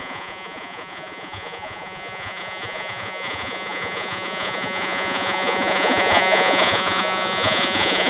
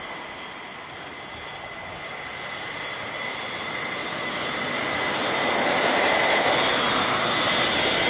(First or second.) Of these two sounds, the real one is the second